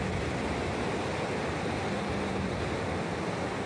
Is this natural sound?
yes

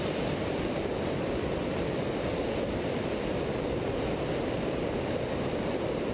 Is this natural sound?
no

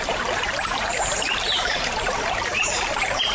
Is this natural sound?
no